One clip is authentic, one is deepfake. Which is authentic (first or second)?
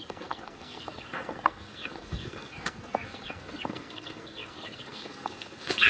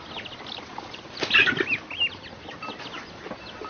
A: second